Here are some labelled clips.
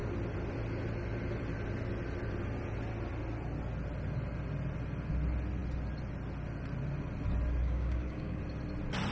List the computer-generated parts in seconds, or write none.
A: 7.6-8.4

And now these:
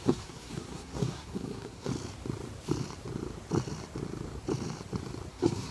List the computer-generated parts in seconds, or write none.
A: 0.0-1.9; 5.3-5.7